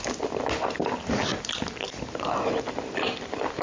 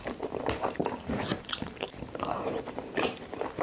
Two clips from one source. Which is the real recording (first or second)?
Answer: first